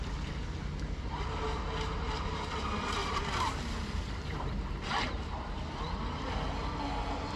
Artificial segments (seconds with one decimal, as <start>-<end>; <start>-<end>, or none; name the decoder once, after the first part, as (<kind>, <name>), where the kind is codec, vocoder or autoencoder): 3.0-5.6 (vocoder, BigVGAN v2)